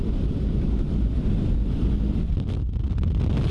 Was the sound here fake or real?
real